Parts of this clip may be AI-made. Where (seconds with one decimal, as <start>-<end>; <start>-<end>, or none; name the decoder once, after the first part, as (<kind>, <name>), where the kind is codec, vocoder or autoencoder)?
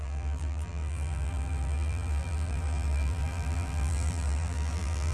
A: 0.0-5.1 (vocoder, BigVGAN v2)